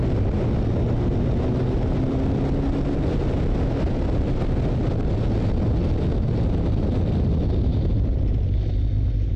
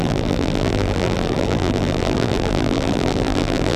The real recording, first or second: first